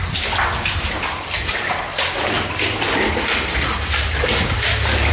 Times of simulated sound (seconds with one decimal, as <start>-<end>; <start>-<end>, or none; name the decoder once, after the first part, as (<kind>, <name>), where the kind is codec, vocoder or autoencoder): 1.9-5.1 (vocoder, BigVGAN v2)